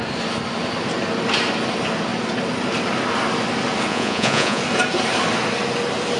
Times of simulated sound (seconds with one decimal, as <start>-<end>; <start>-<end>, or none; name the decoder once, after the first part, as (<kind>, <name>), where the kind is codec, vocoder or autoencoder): 3.9-4.6 (vocoder, Vocos)